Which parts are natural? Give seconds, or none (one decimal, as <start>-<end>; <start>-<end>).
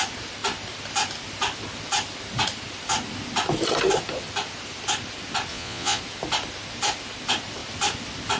0.0-5.5; 6.0-8.4